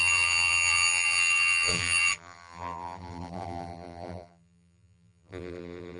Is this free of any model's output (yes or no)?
no